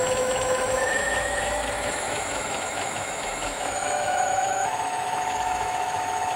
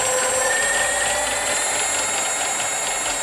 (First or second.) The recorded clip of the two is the second